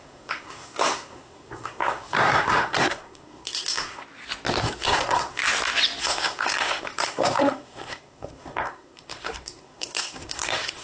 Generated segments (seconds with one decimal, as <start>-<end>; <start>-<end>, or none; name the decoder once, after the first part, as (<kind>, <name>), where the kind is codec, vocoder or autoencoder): 0.0-4.0 (codec, SNAC); 4.6-5.4; 6.0-10.8